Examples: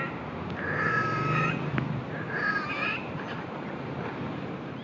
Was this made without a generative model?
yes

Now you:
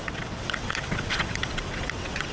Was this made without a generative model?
no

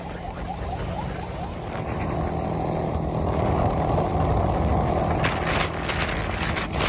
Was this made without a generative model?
yes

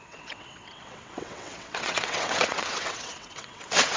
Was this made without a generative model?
no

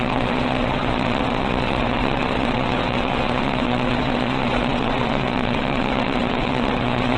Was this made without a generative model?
no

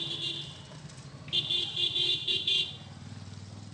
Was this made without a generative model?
yes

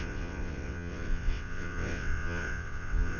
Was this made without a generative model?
no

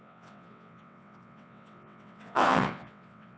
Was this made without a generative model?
no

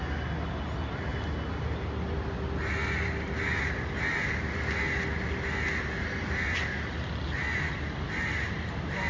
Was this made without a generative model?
yes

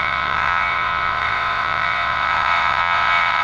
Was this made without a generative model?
no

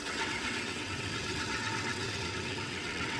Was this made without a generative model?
no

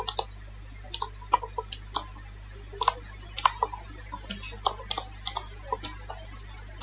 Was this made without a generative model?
yes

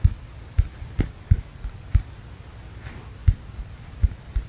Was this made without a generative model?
yes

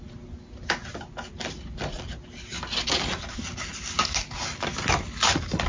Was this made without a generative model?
yes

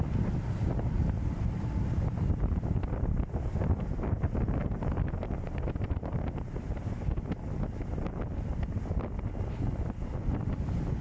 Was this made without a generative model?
yes